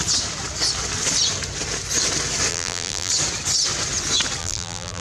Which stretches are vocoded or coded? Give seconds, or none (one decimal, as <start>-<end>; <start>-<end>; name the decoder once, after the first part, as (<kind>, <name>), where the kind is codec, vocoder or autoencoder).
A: 2.5-3.1 (vocoder, BigVGAN v2); 4.4-5.0